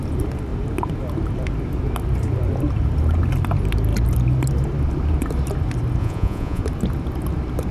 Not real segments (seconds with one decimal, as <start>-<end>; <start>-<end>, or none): 6.0-6.6